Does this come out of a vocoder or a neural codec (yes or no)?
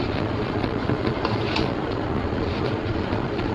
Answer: yes